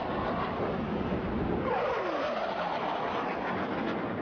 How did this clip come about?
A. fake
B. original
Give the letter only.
B